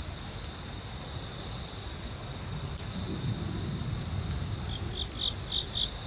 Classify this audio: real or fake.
real